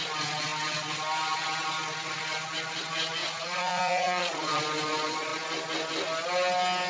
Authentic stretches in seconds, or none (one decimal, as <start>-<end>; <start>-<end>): 0.0-3.2; 4.6-6.9